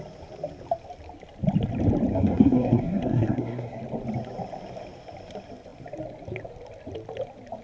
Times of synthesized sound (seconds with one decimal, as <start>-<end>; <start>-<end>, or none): 2.1-3.8